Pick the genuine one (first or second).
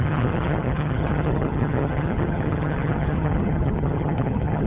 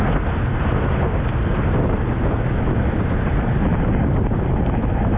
second